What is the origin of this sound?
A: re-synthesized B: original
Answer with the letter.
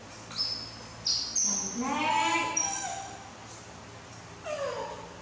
B